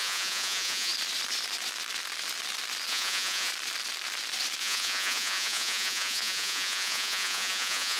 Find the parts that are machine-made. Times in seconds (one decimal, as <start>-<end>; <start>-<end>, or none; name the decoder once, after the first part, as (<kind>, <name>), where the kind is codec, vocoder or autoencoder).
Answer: 0.0-0.9 (vocoder, Vocos); 2.9-3.5; 4.6-8.0